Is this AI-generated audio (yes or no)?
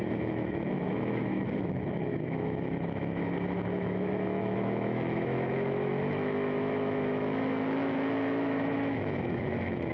yes